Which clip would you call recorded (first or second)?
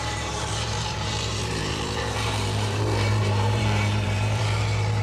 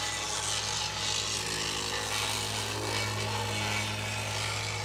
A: second